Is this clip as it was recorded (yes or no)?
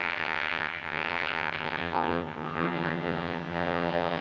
no